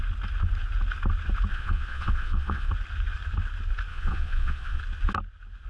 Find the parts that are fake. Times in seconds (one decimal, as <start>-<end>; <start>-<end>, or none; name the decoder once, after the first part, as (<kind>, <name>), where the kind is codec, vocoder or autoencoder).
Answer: 1.5-2.7 (vocoder, Vocos); 3.9-4.8